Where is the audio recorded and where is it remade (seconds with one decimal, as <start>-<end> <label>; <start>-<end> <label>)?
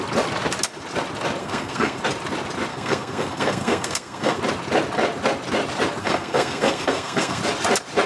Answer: 0.0-1.4 recorded; 1.4-2.0 remade; 2.0-2.7 recorded; 2.7-4.4 remade; 4.4-6.0 recorded; 6.0-7.4 remade; 7.4-8.1 recorded